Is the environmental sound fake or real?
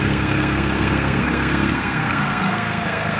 fake